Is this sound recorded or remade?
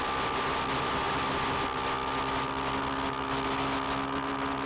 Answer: recorded